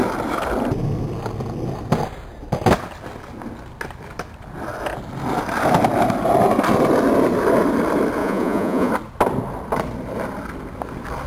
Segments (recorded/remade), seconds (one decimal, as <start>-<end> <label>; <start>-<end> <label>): 0.0-8.2 recorded; 8.2-8.9 remade; 8.9-11.3 recorded